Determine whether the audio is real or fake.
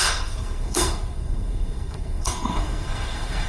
fake